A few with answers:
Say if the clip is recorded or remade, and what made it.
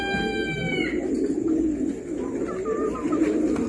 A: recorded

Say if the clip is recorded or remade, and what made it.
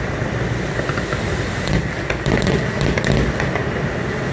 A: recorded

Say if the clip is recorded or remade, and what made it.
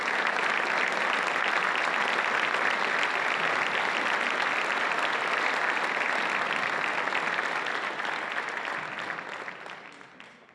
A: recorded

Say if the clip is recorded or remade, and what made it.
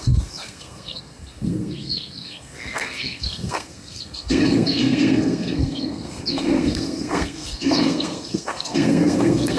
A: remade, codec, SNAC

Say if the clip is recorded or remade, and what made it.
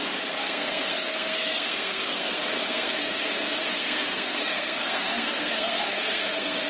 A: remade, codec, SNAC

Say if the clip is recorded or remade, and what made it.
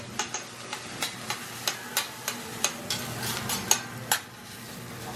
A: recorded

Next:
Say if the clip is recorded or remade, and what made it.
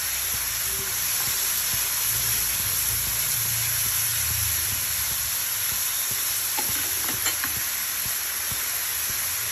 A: recorded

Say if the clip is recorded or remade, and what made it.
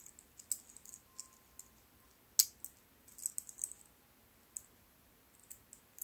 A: recorded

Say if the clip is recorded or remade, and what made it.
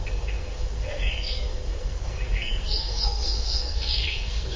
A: remade, codec, SNAC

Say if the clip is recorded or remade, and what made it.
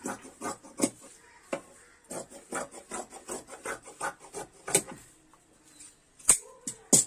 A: recorded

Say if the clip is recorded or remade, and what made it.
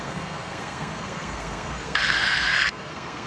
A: remade, codec, SNAC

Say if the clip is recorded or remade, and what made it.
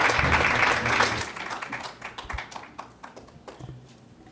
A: recorded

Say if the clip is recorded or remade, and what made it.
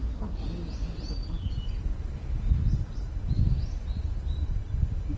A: recorded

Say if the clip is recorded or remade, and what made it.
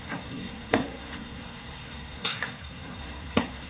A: remade, codec, SNAC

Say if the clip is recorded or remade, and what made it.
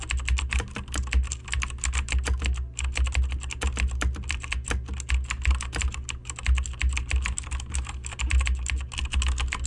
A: recorded